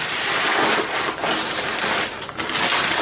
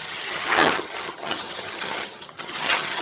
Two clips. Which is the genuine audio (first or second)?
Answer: first